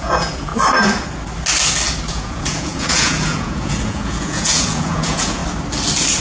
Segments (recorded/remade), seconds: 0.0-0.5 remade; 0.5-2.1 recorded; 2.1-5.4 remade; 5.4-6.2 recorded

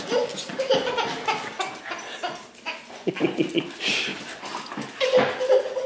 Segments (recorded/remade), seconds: 0.0-5.9 recorded

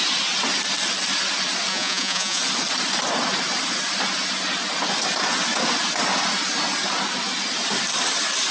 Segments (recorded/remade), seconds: 0.0-1.7 recorded; 1.7-2.4 remade; 2.4-8.5 recorded